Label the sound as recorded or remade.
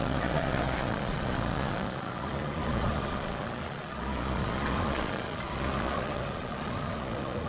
remade